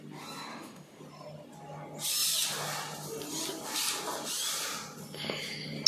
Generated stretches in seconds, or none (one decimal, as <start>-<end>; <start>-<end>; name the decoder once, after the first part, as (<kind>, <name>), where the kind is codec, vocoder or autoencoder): 0.5-1.0 (autoencoder, DAC-VAE)